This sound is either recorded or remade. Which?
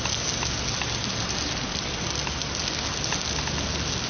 recorded